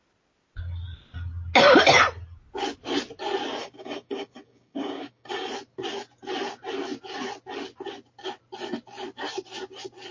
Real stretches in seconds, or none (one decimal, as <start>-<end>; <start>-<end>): 0.0-3.6; 5.5-10.1